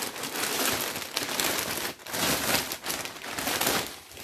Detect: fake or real real